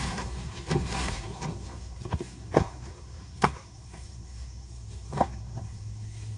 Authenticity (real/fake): fake